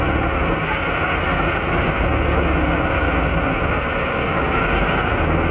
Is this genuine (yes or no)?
yes